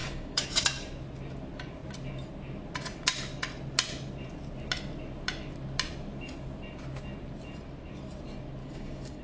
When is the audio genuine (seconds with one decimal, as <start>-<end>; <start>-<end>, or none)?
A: 0.6-8.6